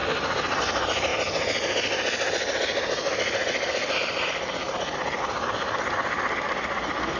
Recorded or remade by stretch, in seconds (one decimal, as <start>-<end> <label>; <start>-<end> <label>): 0.0-7.2 recorded